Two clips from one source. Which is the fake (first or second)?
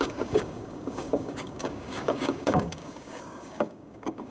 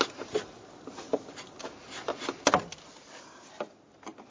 first